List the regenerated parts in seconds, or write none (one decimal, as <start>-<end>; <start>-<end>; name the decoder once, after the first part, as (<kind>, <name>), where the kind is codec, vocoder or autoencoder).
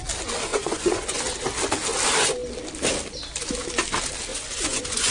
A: 0.5-1.2 (vocoder, Vocos); 4.3-5.1